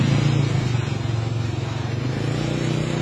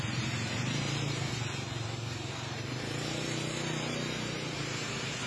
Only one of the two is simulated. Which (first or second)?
second